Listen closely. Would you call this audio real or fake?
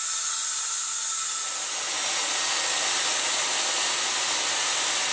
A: real